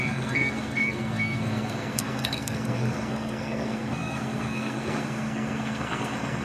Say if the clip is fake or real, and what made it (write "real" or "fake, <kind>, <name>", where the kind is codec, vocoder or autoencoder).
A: fake, codec, SNAC